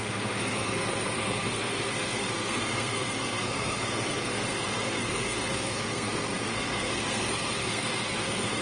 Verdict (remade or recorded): remade